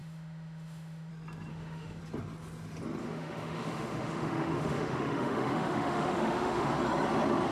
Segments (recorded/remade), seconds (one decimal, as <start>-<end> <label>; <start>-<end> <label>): 0.0-1.1 remade; 1.1-1.5 recorded; 1.5-2.0 remade; 2.0-3.0 recorded; 3.0-6.7 remade; 6.7-7.5 recorded